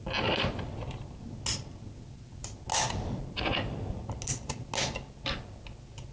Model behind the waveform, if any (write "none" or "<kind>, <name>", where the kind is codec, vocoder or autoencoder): none